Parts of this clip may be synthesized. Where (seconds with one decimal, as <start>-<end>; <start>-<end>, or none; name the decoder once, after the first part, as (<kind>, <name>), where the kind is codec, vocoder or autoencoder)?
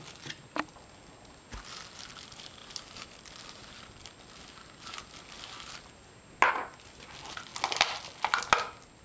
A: none